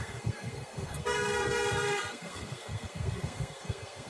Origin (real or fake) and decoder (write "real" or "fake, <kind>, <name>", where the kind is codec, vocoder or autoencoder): fake, codec, SNAC